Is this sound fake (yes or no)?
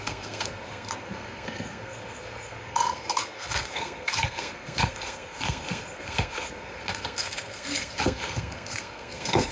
yes